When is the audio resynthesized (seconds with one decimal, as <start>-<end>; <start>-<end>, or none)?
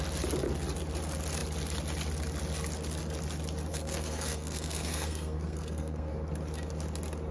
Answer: 3.7-6.1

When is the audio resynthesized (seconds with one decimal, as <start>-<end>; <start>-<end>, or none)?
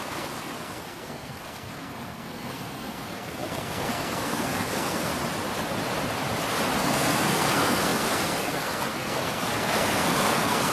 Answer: 0.0-5.1; 6.8-10.7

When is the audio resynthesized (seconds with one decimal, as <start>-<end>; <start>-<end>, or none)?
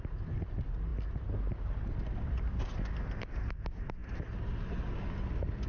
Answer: none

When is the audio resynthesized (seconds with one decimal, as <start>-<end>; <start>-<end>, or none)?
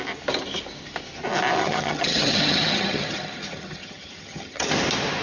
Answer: 1.6-4.7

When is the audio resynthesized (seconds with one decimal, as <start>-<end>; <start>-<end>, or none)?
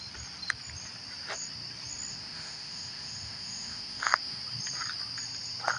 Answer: 2.1-4.4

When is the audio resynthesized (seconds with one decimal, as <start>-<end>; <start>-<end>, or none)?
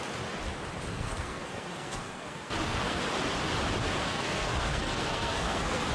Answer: 0.9-3.0; 4.0-5.9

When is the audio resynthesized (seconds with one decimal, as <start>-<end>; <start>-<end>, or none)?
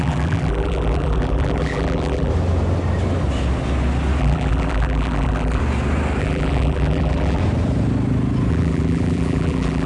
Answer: 0.0-2.3; 4.2-5.6; 6.2-7.4; 8.5-9.9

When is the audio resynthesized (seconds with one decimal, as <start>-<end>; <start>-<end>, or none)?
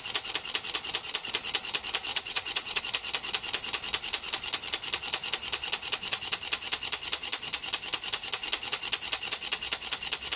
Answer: 2.1-2.8